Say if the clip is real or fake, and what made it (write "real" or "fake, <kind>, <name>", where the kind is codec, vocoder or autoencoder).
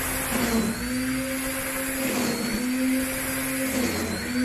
real